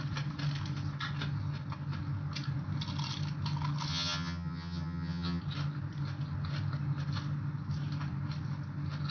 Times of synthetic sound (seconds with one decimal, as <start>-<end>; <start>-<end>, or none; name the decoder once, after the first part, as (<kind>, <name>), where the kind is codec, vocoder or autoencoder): 3.9-5.4 (vocoder, HiFi-GAN)